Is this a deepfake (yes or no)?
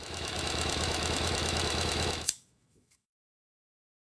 yes